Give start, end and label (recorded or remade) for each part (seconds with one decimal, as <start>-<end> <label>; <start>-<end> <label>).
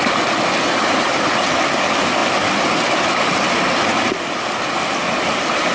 0.0-5.7 recorded